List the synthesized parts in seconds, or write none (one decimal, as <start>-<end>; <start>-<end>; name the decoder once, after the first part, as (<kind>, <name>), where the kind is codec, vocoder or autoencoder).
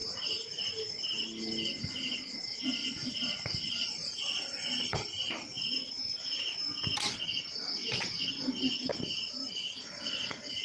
0.0-0.7 (vocoder, BigVGAN v2); 2.8-5.9; 7.8-8.3; 8.8-10.6